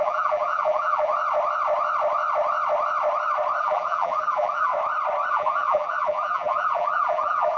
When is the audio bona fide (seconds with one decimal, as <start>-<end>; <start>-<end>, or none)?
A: 1.1-3.6; 4.7-5.3